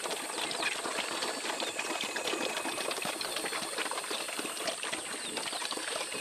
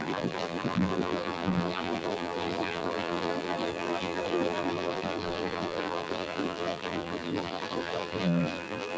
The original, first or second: first